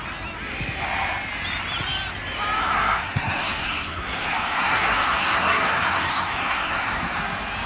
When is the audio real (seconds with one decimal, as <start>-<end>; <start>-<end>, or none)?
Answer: 0.0-2.6; 7.2-7.7

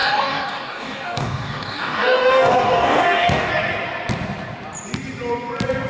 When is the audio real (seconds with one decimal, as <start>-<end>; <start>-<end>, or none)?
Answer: 3.5-5.9